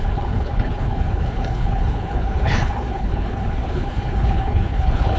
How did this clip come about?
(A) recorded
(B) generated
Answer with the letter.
B